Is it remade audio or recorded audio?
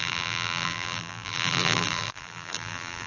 remade